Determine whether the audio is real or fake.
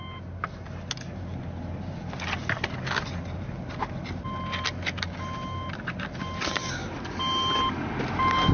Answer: real